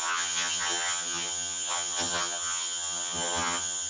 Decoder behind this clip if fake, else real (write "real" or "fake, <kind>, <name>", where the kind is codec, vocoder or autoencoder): fake, vocoder, HiFi-GAN